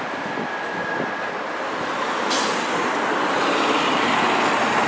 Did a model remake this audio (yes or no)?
no